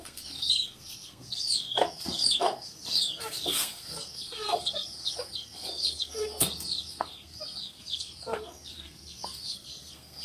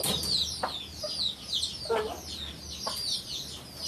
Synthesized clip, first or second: first